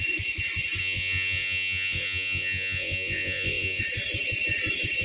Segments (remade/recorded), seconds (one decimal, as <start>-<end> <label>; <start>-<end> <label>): 0.0-0.8 recorded; 0.8-3.8 remade; 3.8-5.0 recorded